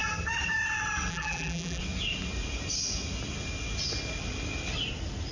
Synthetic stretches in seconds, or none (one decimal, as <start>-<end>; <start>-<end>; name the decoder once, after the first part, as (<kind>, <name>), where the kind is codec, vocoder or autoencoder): 1.1-1.8 (vocoder, BigVGAN v2)